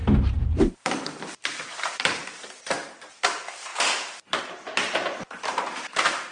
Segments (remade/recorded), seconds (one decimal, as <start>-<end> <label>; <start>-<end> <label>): 0.0-2.2 remade; 2.2-2.8 recorded; 2.8-6.3 remade